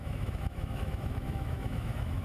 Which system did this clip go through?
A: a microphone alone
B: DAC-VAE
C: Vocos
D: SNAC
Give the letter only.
B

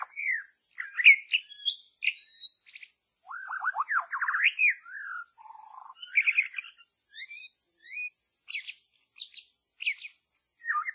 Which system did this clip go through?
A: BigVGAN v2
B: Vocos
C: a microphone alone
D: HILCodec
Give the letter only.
C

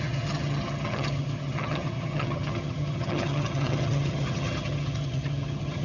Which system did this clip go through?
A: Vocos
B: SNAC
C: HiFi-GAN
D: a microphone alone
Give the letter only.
C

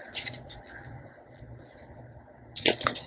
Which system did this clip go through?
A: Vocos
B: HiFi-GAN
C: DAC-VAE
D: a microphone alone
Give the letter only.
A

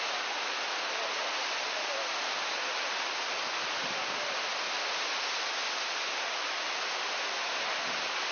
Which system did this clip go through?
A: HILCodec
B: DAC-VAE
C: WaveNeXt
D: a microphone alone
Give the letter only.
D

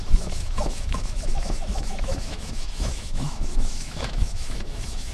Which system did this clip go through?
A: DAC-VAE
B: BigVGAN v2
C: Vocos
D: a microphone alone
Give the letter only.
A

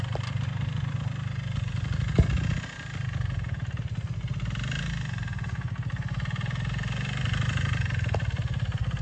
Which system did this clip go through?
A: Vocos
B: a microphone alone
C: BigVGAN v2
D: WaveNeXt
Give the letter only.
B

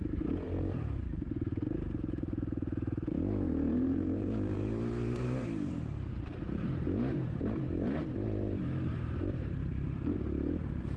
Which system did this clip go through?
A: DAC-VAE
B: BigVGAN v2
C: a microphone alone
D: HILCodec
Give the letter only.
B